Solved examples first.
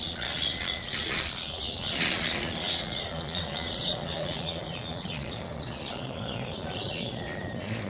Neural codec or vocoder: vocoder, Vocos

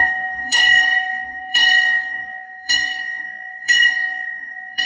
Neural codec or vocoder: codec, DAC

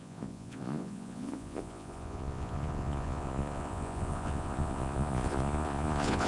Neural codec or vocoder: vocoder, Vocos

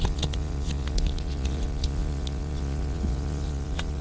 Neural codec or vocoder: vocoder, Vocos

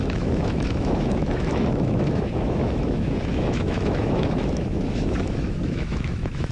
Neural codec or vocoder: autoencoder, DAC-VAE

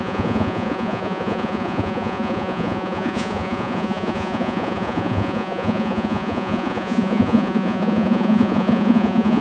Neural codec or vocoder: vocoder, Vocos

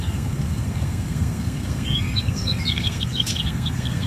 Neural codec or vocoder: codec, SNAC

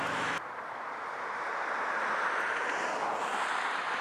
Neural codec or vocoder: none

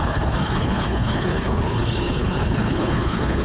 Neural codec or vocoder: codec, HILCodec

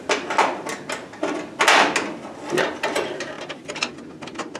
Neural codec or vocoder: none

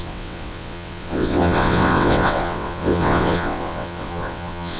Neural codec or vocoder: vocoder, WaveNeXt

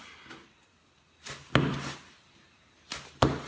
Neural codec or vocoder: none